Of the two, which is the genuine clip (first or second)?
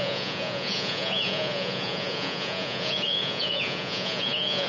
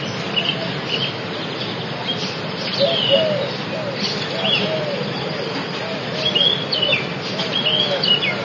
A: second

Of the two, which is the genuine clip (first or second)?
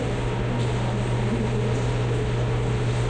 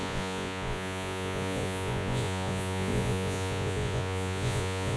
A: first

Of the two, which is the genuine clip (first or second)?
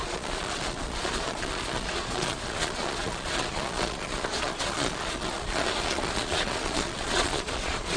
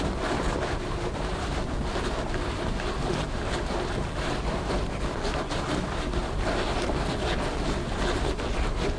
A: second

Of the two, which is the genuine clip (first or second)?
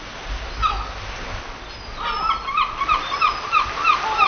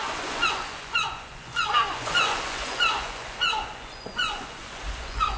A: first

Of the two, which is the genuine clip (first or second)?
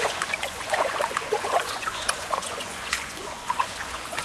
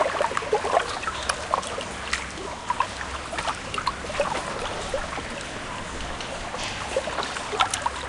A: second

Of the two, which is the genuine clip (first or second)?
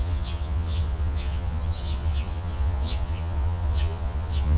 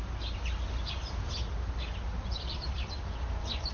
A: second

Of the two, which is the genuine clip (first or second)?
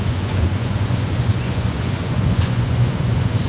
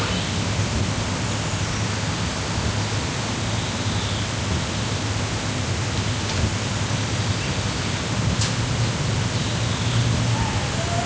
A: second